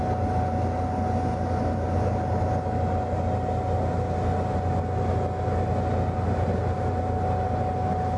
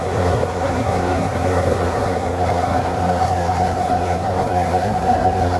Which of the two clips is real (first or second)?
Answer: first